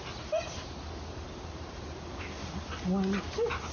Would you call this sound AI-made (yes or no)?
no